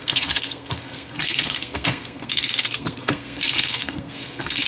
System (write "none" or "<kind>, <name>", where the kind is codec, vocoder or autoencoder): codec, SNAC